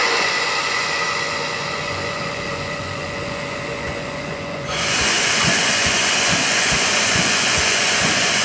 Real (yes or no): no